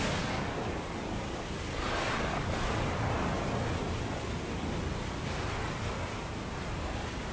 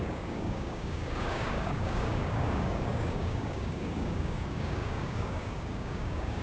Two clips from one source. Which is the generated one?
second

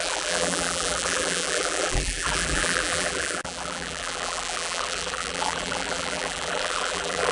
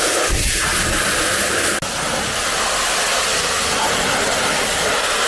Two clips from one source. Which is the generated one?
first